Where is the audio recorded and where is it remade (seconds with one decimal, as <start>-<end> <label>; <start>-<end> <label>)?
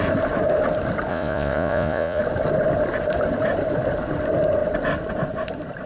0.0-1.1 recorded; 1.1-2.2 remade; 2.2-5.9 recorded